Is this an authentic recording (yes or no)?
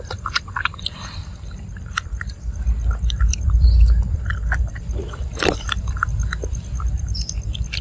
no